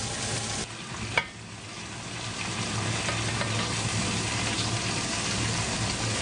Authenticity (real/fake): real